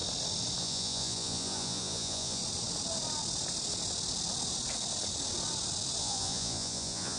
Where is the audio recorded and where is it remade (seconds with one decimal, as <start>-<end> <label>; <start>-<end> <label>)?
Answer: 0.0-0.6 recorded; 0.6-2.4 remade; 2.4-6.0 recorded; 6.0-7.2 remade